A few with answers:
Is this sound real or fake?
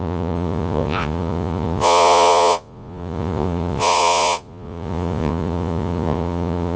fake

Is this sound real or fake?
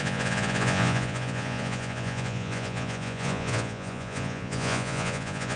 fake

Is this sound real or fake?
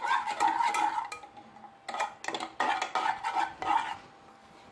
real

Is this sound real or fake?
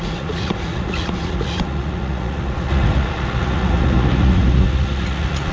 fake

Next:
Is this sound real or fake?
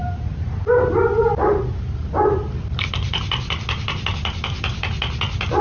real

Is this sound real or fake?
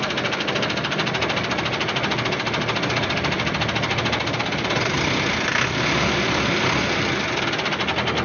real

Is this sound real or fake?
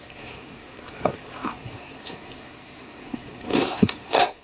fake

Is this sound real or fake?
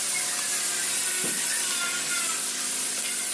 real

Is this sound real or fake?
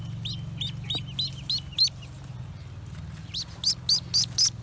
real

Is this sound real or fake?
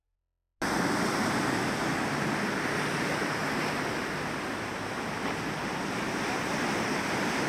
real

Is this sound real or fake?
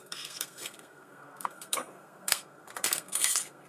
fake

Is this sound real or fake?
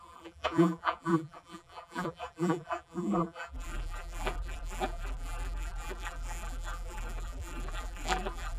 fake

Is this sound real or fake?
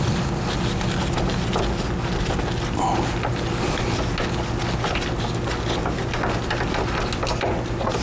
real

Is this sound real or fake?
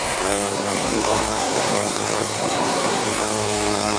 fake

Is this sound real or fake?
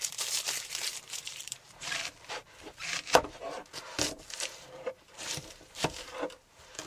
fake